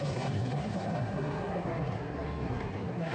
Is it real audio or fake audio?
fake